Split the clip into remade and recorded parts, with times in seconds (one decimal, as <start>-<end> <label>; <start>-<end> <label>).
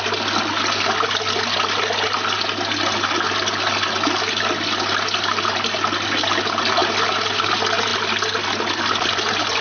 0.0-9.6 recorded